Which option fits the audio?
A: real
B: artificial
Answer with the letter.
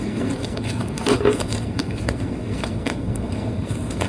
B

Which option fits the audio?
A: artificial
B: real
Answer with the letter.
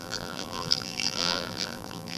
A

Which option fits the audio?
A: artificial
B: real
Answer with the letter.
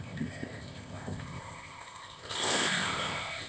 A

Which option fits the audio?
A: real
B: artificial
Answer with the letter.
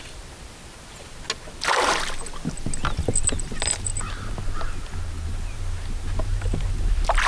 A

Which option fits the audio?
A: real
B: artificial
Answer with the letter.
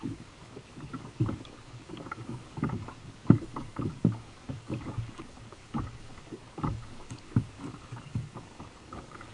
B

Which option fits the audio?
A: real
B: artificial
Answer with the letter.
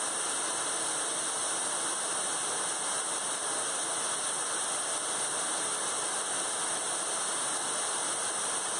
A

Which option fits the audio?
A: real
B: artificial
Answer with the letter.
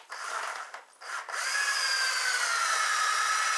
A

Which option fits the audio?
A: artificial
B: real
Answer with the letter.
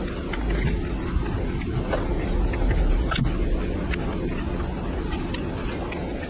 B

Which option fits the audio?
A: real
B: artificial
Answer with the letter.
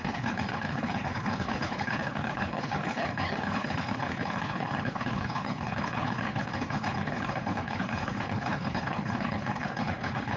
B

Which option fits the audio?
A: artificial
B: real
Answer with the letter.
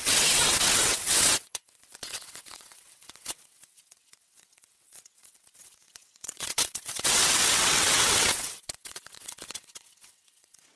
A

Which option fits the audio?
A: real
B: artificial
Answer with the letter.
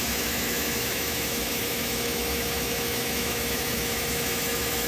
B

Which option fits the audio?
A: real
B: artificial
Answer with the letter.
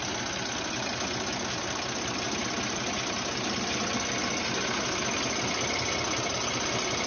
A